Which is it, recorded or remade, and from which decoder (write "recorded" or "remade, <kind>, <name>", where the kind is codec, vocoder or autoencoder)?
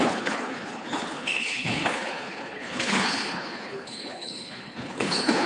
remade, codec, HILCodec